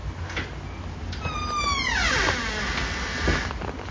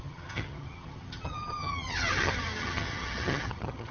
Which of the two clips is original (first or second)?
first